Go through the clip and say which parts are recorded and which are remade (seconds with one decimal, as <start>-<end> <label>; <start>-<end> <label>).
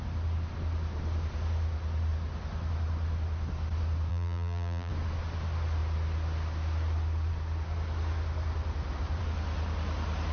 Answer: 0.0-4.1 recorded; 4.1-4.9 remade; 4.9-10.3 recorded